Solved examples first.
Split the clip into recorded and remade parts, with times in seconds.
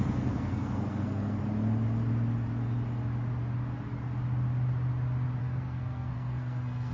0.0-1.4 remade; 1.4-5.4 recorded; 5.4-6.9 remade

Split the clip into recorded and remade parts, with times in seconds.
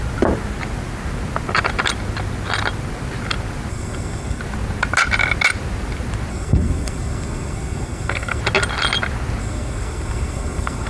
0.0-3.7 recorded; 3.7-4.4 remade; 4.4-6.3 recorded; 6.3-8.4 remade; 8.4-9.4 recorded; 9.4-10.9 remade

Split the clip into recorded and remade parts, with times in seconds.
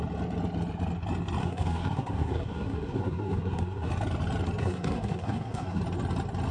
0.0-1.4 recorded; 1.4-3.9 remade; 3.9-4.6 recorded; 4.6-5.8 remade; 5.8-6.5 recorded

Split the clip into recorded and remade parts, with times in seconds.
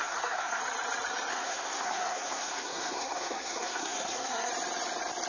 0.0-0.6 remade; 0.6-1.3 recorded; 1.3-4.5 remade; 4.5-5.3 recorded